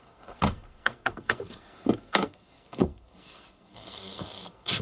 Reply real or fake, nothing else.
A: fake